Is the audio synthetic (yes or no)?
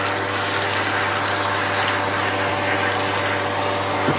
no